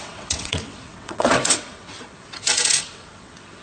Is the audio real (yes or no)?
no